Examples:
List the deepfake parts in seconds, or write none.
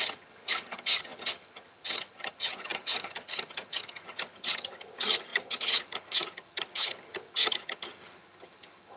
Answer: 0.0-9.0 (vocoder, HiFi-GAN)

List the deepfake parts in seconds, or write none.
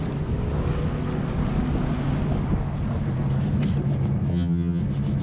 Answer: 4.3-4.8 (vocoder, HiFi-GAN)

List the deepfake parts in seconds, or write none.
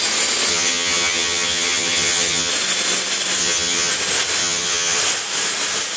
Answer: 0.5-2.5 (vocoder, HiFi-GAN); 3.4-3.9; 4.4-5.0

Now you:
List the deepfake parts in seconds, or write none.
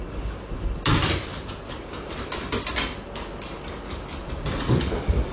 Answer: none